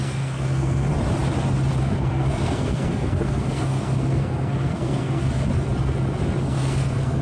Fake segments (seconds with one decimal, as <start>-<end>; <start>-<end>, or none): 0.0-0.9; 1.8-5.5; 6.4-7.2